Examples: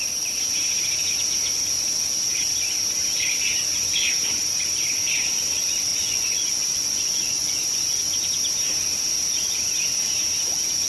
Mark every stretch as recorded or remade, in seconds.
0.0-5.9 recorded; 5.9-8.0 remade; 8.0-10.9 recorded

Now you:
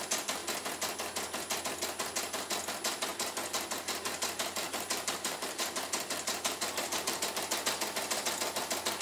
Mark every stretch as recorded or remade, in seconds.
0.0-3.1 recorded; 3.1-7.3 remade; 7.3-9.0 recorded

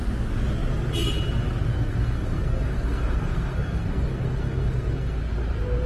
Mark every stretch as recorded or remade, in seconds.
0.0-1.7 recorded; 1.7-5.2 remade; 5.2-5.9 recorded